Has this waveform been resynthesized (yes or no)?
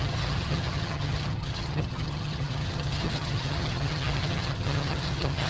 yes